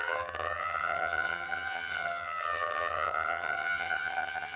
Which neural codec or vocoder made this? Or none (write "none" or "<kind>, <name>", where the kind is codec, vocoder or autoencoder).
vocoder, HiFi-GAN